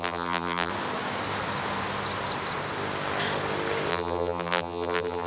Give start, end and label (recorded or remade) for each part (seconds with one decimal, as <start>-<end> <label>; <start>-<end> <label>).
0.0-0.7 remade; 0.7-3.9 recorded; 3.9-5.3 remade